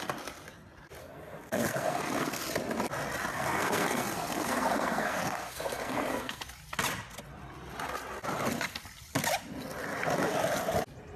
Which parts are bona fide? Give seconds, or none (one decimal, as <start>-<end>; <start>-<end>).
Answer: 0.0-1.0; 2.4-3.3; 6.4-11.2